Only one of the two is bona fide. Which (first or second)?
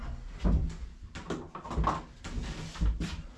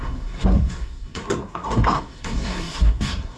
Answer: first